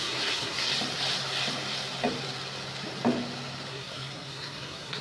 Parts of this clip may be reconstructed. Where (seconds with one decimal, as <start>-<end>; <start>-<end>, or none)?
0.0-0.7; 3.7-5.0